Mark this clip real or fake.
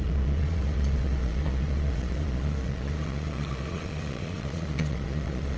fake